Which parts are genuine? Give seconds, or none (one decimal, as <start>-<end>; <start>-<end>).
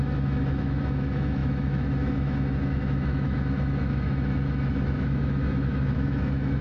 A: none